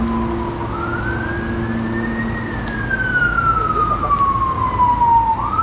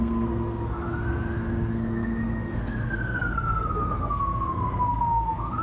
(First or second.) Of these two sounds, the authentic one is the first